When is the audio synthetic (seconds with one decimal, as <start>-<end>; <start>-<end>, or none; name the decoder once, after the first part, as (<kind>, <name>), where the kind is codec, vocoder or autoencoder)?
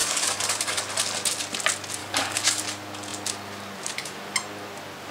0.0-0.8 (codec, DAC); 2.0-2.6